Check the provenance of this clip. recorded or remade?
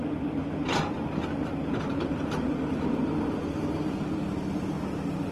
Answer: recorded